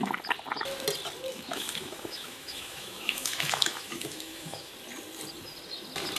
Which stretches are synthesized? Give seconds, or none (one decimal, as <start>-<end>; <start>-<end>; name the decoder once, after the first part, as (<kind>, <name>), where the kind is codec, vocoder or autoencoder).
1.3-4.7 (autoencoder, DAC-VAE)